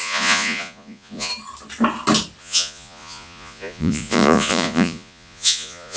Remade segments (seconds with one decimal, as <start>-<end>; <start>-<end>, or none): 0.0-1.3; 2.4-6.0